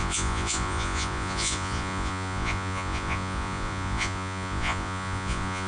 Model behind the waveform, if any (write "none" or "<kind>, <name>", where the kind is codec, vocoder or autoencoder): vocoder, Vocos